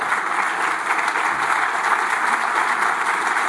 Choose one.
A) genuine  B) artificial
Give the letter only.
A